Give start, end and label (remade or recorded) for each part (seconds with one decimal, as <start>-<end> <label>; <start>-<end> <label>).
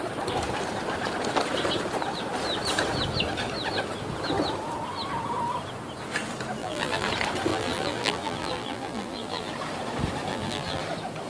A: 0.0-6.6 recorded; 6.6-7.1 remade; 7.1-7.5 recorded; 7.5-9.5 remade; 9.5-10.3 recorded; 10.3-10.8 remade; 10.8-11.3 recorded